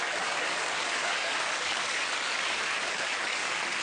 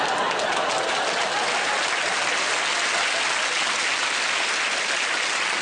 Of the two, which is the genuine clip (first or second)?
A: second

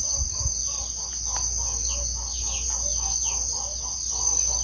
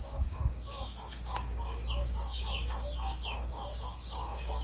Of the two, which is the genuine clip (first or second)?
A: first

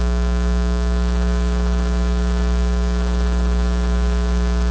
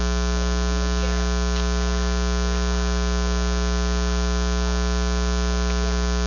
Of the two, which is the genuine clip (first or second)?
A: second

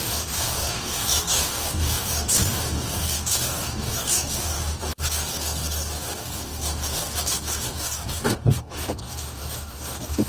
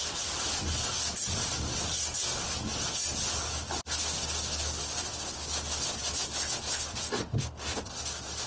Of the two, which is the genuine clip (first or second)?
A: second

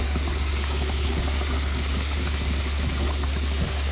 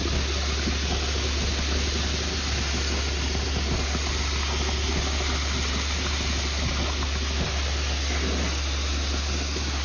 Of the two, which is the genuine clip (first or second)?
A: second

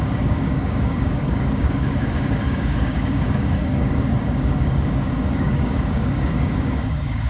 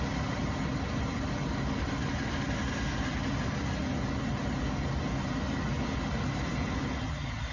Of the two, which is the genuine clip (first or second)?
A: second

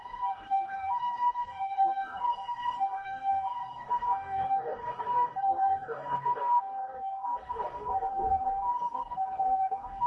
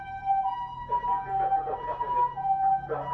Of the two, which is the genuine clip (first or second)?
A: second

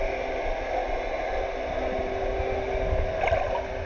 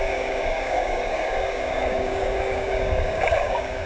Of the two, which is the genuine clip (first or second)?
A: first